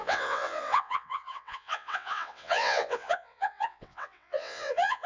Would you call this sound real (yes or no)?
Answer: no